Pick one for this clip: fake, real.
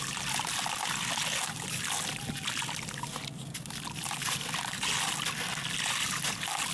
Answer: real